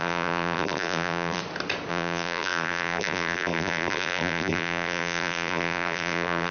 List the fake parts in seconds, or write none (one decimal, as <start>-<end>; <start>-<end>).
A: 0.0-1.4; 1.9-6.5